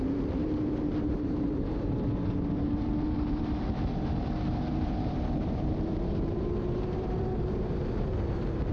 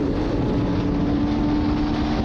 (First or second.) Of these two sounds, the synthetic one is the first